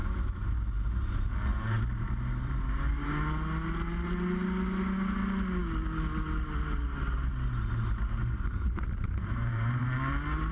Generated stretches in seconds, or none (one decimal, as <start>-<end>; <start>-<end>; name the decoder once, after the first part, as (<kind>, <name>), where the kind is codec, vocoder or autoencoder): 0.0-0.5 (vocoder, BigVGAN v2); 1.5-3.2; 8.2-9.8